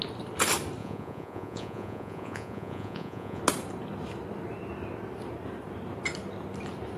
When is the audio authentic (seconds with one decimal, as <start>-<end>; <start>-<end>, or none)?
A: 0.0-0.8; 3.4-7.0

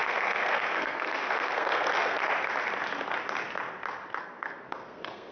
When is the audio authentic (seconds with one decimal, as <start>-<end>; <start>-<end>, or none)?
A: 2.2-4.2

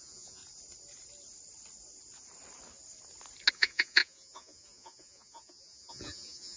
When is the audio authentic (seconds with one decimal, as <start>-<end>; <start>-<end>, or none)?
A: 0.4-3.5

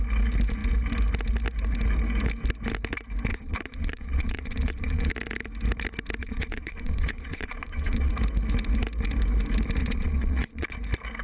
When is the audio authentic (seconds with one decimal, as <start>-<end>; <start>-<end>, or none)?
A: 0.0-3.3; 5.1-6.2; 8.1-9.8; 10.7-11.2

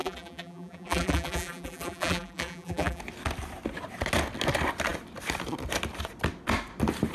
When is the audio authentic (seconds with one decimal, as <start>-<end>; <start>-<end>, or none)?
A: 3.0-7.1

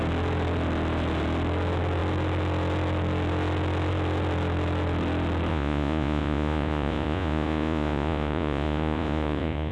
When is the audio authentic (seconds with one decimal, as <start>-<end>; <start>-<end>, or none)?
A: 0.0-5.5